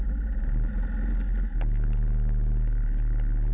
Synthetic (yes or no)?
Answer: no